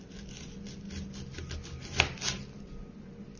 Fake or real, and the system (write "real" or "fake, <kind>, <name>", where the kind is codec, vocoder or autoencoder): real